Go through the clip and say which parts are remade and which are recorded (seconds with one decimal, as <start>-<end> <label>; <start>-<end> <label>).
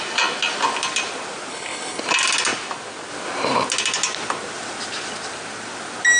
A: 0.0-1.5 recorded; 1.5-2.0 remade; 2.0-6.2 recorded